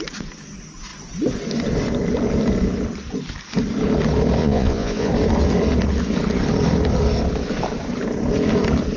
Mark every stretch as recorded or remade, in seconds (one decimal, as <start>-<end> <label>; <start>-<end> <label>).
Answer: 0.0-4.4 recorded; 4.4-5.1 remade; 5.1-9.0 recorded